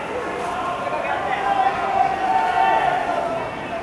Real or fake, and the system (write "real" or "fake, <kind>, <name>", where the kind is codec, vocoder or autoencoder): real